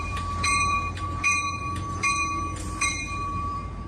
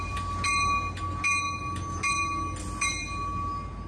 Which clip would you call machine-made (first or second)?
first